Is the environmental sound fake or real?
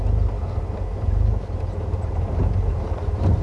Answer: real